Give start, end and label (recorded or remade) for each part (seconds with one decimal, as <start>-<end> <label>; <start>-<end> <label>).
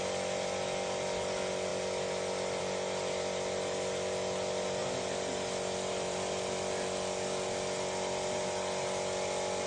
0.0-1.7 remade; 1.7-2.6 recorded; 2.6-9.7 remade